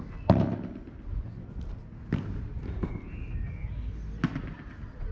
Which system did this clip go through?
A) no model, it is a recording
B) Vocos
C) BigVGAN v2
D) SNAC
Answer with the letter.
A